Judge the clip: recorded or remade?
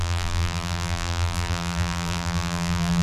remade